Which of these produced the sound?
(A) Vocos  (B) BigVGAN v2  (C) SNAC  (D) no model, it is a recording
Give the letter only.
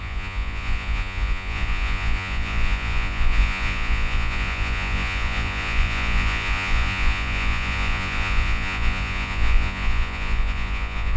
A